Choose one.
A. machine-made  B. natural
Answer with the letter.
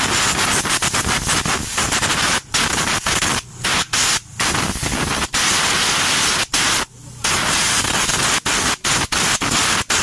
B